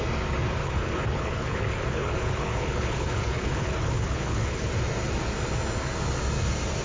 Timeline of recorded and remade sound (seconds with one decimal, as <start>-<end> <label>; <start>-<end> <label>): 0.0-0.6 recorded; 0.6-4.7 remade; 4.7-6.8 recorded